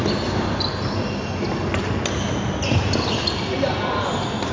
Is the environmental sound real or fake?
real